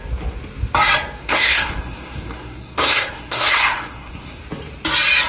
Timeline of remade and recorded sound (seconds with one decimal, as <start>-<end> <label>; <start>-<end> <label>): 0.0-1.2 recorded; 1.2-4.4 remade; 4.4-5.3 recorded